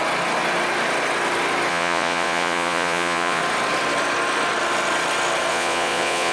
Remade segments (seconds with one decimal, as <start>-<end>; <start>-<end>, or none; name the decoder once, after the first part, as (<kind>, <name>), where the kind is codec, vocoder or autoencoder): 1.7-3.4 (vocoder, Vocos); 5.5-6.3